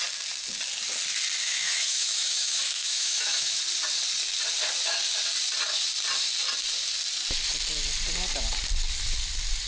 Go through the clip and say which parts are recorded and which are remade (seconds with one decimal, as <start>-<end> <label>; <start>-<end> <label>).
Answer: 0.0-1.4 recorded; 1.4-3.6 remade; 3.6-9.7 recorded

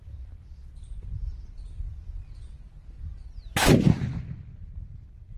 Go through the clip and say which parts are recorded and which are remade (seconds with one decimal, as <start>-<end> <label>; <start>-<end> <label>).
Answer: 0.0-5.4 recorded

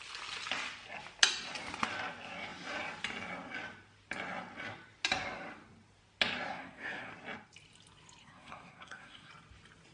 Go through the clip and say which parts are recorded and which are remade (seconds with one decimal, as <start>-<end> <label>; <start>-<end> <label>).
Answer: 0.0-6.5 recorded; 6.5-7.1 remade; 7.1-8.2 recorded; 8.2-9.3 remade; 9.3-9.9 recorded

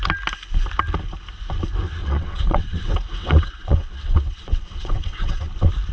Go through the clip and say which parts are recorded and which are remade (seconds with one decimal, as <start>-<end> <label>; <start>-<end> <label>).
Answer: 0.0-2.0 recorded; 2.0-5.5 remade; 5.5-5.9 recorded

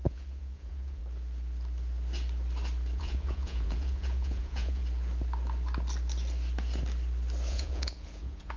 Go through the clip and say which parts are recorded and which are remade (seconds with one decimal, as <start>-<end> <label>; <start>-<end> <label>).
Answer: 0.0-1.0 remade; 1.0-3.0 recorded; 3.0-4.8 remade; 4.8-7.5 recorded; 7.5-8.6 remade